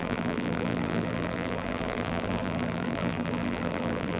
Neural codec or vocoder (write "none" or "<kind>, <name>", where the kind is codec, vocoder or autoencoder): vocoder, BigVGAN v2